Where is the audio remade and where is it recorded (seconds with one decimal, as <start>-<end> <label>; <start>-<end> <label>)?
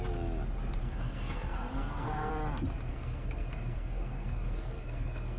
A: 0.0-0.8 recorded; 0.8-2.3 remade; 2.3-2.9 recorded; 2.9-5.4 remade